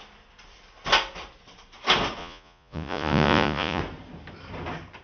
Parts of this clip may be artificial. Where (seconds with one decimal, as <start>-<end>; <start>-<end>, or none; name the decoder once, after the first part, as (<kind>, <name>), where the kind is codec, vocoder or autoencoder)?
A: 2.2-3.8 (vocoder, Vocos)